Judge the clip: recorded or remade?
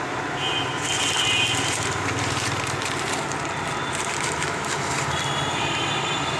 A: remade